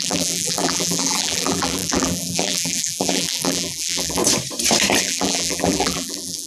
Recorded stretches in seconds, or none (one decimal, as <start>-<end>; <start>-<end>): 4.2-5.0